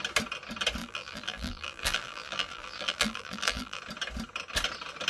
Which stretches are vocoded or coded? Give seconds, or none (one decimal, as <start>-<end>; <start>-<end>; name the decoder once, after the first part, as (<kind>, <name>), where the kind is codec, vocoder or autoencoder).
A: 0.8-3.8 (vocoder, BigVGAN v2)